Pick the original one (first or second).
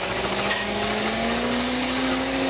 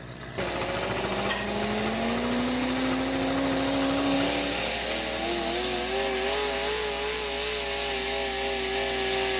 second